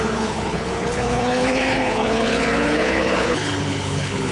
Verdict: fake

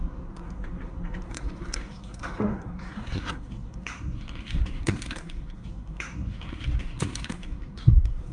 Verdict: fake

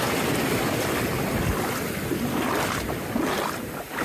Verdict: real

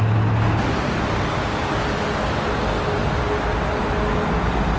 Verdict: real